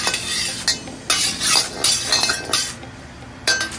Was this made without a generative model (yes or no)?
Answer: yes